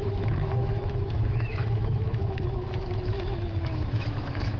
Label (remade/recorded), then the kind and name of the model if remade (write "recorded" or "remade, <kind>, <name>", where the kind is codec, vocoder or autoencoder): remade, autoencoder, DAC-VAE